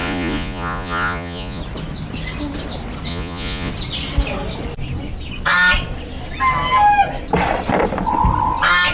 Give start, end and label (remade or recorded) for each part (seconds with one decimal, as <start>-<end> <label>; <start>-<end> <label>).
0.0-1.6 remade; 1.6-3.1 recorded; 3.1-3.7 remade; 3.7-8.9 recorded